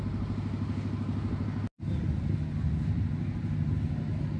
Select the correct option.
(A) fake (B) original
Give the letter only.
B